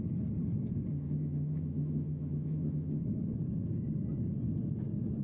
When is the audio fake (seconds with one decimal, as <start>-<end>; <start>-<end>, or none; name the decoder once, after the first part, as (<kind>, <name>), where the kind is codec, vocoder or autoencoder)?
0.9-3.0 (vocoder, HiFi-GAN)